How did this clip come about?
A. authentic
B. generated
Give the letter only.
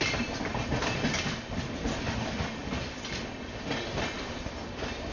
A